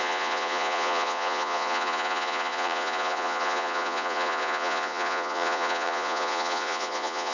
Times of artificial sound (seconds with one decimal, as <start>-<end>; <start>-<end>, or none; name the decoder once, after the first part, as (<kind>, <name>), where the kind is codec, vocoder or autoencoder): 0.0-7.3 (vocoder, Vocos)